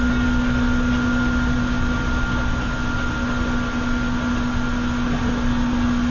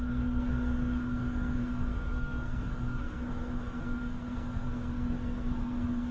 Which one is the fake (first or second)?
second